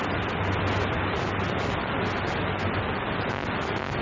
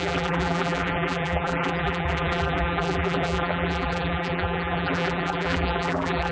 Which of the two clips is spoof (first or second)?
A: second